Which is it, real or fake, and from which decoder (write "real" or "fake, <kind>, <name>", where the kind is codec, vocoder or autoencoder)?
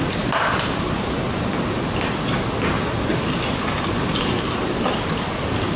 real